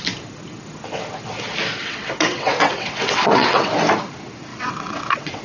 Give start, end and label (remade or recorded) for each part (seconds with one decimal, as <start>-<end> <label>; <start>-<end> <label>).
0.0-1.8 recorded; 1.8-3.7 remade; 3.7-4.5 recorded; 4.5-5.4 remade